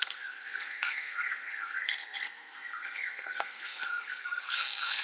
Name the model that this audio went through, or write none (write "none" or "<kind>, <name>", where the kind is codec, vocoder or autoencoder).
codec, SNAC